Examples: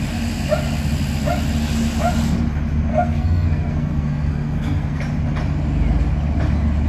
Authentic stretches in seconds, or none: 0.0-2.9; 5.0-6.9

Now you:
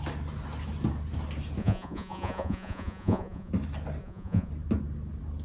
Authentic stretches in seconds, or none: 0.0-1.6; 3.5-4.0; 4.5-5.4

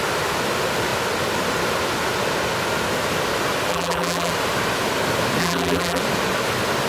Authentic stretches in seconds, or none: 0.0-3.7; 4.3-5.4; 6.0-6.9

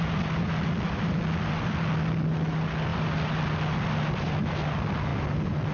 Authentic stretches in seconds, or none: 0.0-5.7